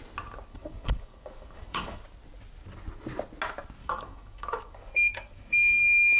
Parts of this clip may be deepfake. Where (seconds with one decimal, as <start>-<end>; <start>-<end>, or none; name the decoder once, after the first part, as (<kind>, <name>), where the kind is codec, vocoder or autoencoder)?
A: 0.5-2.0 (codec, DAC); 3.8-5.8